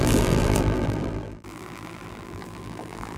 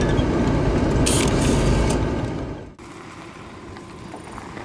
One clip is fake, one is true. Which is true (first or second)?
second